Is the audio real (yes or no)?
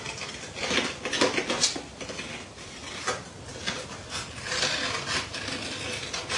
yes